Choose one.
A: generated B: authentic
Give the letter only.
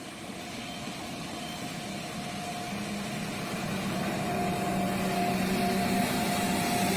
B